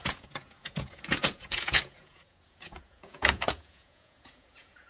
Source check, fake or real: fake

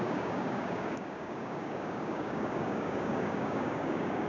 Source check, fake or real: fake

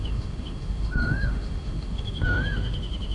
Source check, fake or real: fake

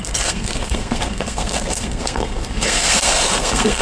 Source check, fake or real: fake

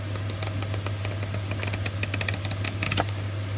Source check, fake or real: real